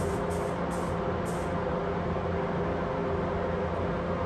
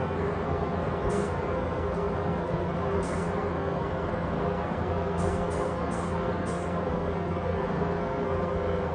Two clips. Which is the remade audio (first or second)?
second